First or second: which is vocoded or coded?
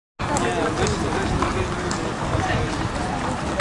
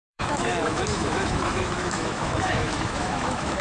second